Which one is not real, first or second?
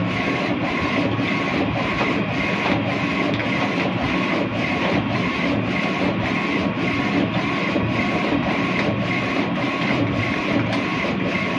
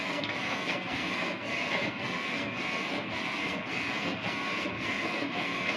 second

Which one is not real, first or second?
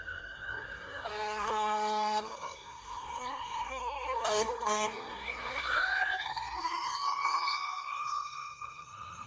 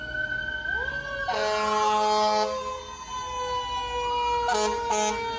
first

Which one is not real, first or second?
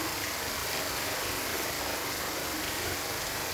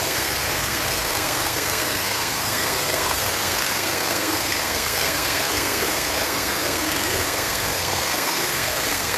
second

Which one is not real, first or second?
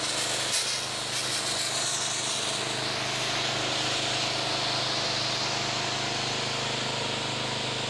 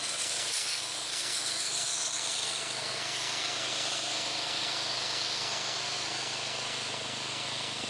second